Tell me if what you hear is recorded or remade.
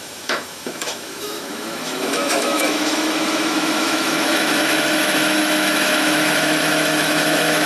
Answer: remade